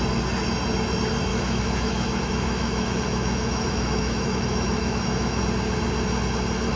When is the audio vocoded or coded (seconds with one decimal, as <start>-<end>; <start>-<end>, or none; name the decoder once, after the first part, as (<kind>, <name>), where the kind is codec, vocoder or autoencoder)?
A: 1.3-5.4 (autoencoder, DAC-VAE)